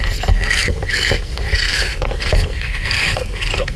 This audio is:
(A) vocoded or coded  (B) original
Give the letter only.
A